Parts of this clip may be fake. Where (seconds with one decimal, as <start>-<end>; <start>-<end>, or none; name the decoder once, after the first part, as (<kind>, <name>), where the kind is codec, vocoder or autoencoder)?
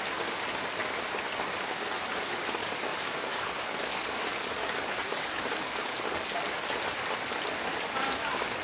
2.9-6.5 (codec, DAC)